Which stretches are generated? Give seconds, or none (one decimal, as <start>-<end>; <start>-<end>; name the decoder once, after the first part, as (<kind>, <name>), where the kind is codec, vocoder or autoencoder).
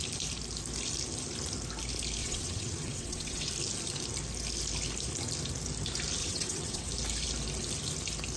2.2-3.5 (vocoder, WaveNeXt); 6.2-6.9